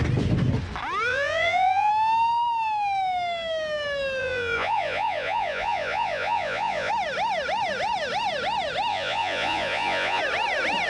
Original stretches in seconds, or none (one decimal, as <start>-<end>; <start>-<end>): 0.0-1.1; 1.9-4.2; 6.9-8.9; 10.2-10.9